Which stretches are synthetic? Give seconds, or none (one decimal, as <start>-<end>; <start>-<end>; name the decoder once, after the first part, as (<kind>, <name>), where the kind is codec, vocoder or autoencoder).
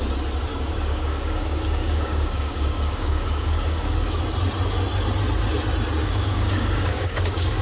0.5-4.2 (codec, DAC); 6.0-7.6